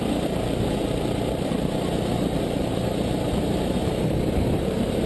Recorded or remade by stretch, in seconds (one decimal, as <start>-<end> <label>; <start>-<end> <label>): 0.0-3.8 remade; 3.8-4.4 recorded; 4.4-5.1 remade